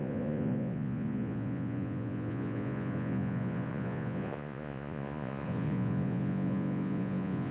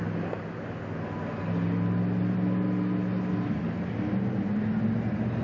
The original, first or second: second